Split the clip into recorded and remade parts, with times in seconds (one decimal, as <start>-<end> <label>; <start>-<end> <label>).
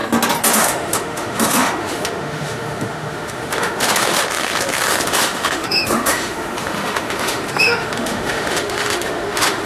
0.0-0.5 recorded; 0.5-9.7 remade